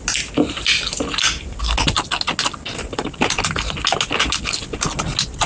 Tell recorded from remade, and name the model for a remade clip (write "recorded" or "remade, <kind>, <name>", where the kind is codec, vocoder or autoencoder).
recorded